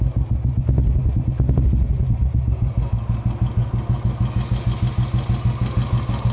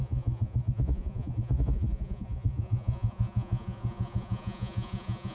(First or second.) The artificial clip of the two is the second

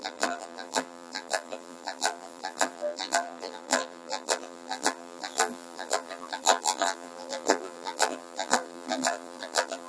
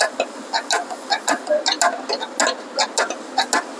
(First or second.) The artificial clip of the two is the first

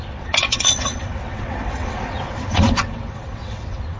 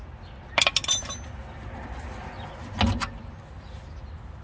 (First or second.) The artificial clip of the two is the first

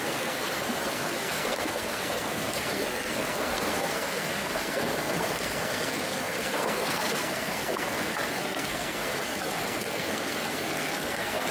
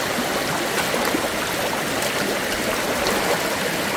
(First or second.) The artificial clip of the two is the first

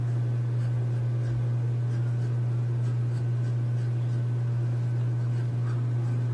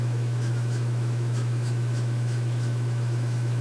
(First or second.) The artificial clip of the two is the second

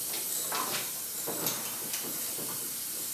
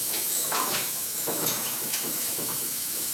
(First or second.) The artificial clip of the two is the second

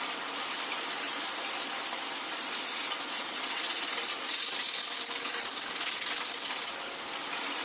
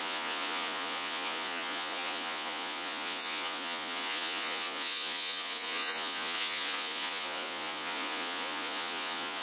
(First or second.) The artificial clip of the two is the second